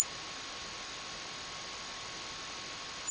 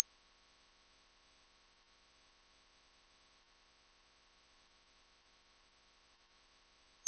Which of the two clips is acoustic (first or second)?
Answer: first